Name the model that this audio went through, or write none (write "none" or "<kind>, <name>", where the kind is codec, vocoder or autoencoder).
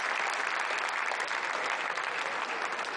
none